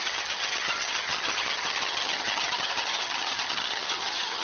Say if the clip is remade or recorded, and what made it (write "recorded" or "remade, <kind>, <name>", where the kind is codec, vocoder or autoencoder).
remade, vocoder, HiFi-GAN